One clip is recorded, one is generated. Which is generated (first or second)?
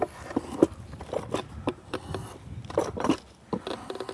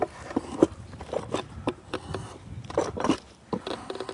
second